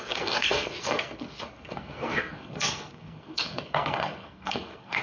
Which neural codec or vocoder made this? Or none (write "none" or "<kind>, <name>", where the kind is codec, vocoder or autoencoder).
codec, SNAC